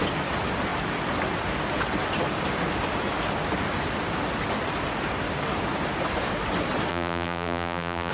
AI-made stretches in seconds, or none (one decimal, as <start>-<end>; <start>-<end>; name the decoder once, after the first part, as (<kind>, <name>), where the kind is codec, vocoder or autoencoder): 6.9-8.1 (vocoder, BigVGAN v2)